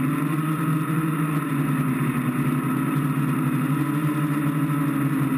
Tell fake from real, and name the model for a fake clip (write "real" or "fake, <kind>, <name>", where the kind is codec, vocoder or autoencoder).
real